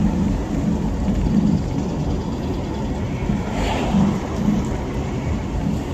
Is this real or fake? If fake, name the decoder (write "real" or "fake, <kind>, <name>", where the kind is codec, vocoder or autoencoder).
real